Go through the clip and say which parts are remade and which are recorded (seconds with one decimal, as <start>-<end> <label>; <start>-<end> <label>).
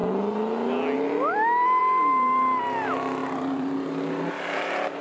0.0-3.2 recorded; 3.2-5.0 remade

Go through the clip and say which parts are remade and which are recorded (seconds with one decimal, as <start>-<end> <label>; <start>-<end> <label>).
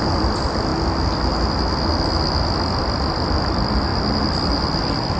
0.0-0.7 remade; 0.7-2.8 recorded; 2.8-5.2 remade